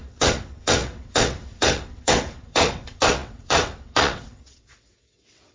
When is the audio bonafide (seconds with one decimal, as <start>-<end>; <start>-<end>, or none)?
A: none